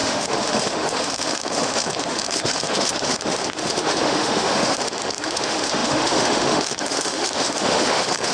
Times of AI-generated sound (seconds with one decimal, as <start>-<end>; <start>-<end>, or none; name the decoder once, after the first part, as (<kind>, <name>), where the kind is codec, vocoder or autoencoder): 0.0-8.3 (autoencoder, DAC-VAE)